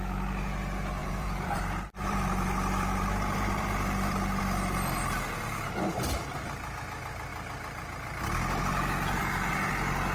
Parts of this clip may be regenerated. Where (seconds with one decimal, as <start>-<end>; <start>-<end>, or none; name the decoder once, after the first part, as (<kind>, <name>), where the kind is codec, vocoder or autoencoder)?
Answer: 1.0-4.4 (vocoder, BigVGAN v2); 9.2-9.7